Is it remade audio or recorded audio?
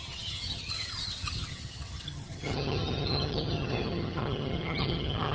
remade